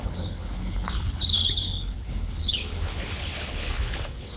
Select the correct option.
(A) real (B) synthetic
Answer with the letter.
B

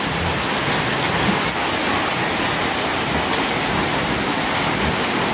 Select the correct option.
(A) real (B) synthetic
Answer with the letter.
A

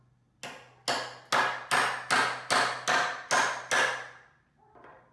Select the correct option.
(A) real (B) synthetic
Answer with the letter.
A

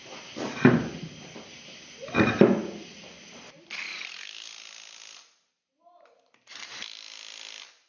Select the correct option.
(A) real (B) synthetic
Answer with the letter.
A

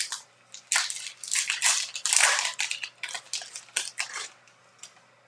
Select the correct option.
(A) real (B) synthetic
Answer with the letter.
A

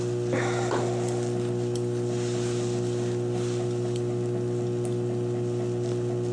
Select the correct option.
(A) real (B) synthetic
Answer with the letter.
A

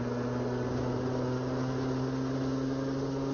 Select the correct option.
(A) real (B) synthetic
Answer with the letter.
A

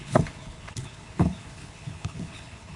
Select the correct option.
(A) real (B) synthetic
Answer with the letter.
B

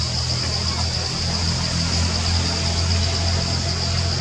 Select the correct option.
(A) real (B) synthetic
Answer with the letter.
A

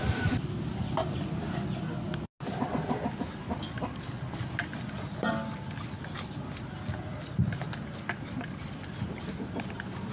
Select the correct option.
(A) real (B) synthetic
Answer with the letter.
A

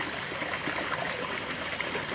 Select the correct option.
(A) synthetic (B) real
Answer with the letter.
B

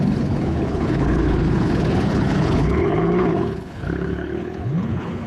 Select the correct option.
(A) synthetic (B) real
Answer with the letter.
A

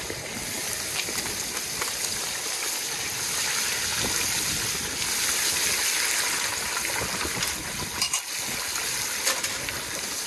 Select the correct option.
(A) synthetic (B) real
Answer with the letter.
B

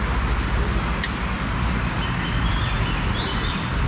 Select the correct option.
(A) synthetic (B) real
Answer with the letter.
B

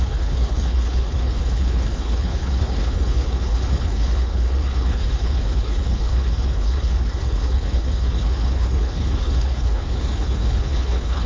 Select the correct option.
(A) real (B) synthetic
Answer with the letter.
B